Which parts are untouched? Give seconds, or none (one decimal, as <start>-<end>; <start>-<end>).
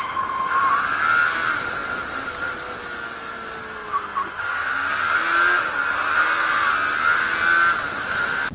0.0-8.5